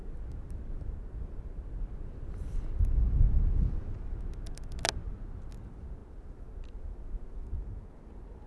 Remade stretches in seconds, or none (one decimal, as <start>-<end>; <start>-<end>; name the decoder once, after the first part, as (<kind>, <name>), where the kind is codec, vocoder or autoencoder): none